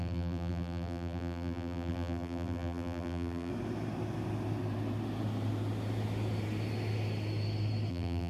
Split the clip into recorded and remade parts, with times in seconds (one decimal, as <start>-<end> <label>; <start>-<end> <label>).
0.0-3.5 remade; 3.5-7.9 recorded; 7.9-8.3 remade